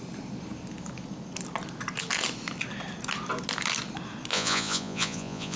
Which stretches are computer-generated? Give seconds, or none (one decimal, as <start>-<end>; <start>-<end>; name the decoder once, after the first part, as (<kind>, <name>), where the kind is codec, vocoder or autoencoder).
4.3-5.6 (vocoder, Vocos)